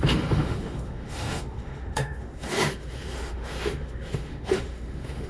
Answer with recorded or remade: remade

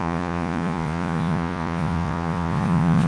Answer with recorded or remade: remade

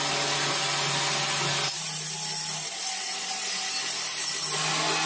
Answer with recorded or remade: recorded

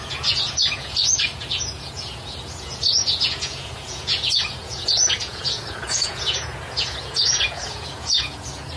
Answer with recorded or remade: remade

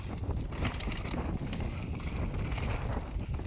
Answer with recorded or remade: recorded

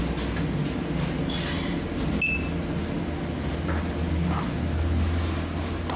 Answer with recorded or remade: recorded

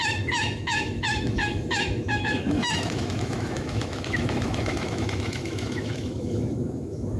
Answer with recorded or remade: remade